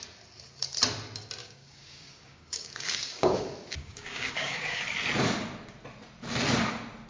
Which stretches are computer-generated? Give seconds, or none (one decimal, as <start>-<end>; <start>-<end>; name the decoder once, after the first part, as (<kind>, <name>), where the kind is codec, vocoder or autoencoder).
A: 1.4-3.4 (codec, DAC); 3.8-4.8